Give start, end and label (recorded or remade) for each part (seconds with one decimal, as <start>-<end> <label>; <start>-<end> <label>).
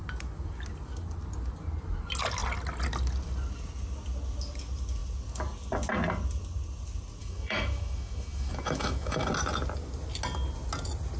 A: 0.0-7.2 recorded; 7.2-9.3 remade; 9.3-11.2 recorded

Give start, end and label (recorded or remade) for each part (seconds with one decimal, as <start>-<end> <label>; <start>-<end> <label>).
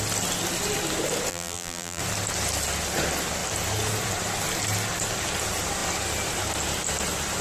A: 0.0-1.3 recorded; 1.3-2.0 remade; 2.0-7.4 recorded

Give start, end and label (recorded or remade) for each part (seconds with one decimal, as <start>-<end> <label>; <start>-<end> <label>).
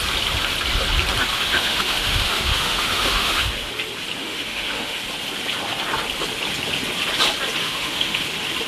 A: 0.0-1.3 recorded; 1.3-3.7 remade; 3.7-4.2 recorded; 4.2-5.0 remade; 5.0-7.6 recorded; 7.6-8.2 remade; 8.2-8.7 recorded